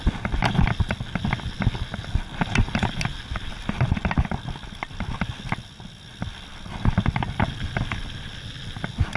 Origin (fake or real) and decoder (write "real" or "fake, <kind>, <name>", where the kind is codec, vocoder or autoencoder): real